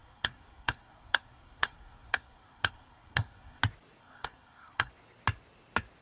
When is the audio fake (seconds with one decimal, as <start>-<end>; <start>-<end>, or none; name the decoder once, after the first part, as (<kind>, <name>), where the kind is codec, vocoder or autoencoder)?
0.0-3.6 (codec, SNAC); 4.0-4.9